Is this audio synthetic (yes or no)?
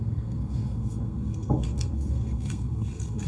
yes